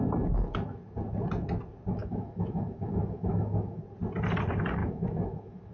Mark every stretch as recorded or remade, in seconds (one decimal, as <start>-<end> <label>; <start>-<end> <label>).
0.0-2.0 recorded; 2.0-3.8 remade; 3.8-4.8 recorded; 4.8-5.7 remade

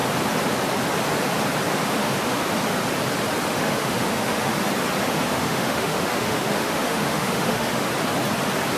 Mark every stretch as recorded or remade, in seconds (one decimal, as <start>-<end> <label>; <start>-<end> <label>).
0.0-1.7 recorded; 1.7-2.5 remade; 2.5-3.5 recorded; 3.5-4.5 remade; 4.5-5.0 recorded; 5.0-7.9 remade; 7.9-8.8 recorded

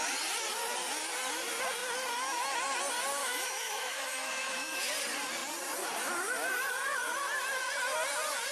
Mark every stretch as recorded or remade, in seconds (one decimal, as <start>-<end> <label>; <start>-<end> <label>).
0.0-3.2 recorded; 3.2-4.9 remade; 4.9-8.5 recorded

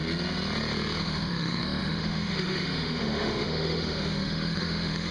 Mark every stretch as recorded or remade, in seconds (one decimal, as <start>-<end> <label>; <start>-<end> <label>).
0.0-1.0 recorded; 1.0-5.1 remade